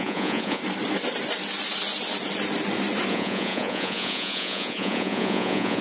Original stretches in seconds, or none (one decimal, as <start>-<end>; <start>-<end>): 0.6-3.1